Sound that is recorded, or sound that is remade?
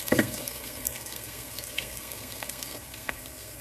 remade